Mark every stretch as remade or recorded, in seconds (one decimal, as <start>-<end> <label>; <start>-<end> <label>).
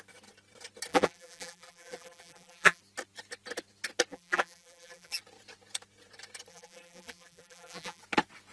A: 0.0-0.9 recorded; 0.9-2.8 remade; 2.8-4.1 recorded; 4.1-5.2 remade; 5.2-6.5 recorded; 6.5-8.0 remade; 8.0-8.5 recorded